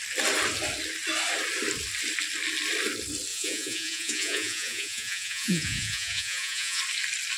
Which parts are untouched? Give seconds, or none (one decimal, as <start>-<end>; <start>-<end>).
0.0-3.3; 6.8-7.4